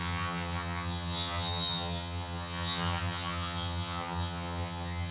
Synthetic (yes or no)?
yes